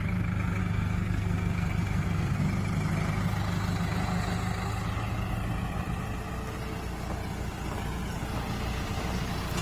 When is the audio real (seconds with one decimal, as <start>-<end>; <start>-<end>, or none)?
0.0-0.6; 2.4-9.6